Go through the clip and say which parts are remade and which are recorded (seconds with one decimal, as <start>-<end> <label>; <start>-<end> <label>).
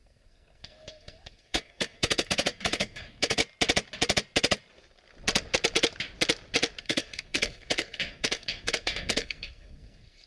0.0-3.4 remade; 3.4-6.8 recorded; 6.8-10.3 remade